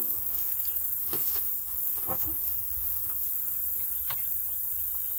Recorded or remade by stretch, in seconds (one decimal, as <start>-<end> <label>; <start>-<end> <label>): 0.0-0.5 remade; 0.5-1.0 recorded; 1.0-3.3 remade; 3.3-5.2 recorded